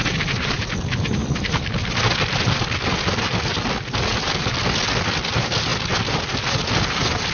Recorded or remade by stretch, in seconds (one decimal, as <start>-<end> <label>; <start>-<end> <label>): 0.0-7.3 recorded